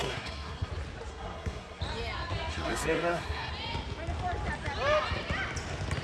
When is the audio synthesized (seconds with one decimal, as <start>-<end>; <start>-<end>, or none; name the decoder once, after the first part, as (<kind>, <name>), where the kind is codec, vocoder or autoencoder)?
0.0-0.7 (codec, SNAC); 1.1-1.8; 2.5-3.5